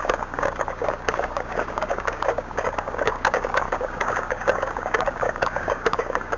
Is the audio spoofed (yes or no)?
yes